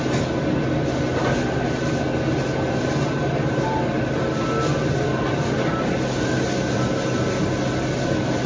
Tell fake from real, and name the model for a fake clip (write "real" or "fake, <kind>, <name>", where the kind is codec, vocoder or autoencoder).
real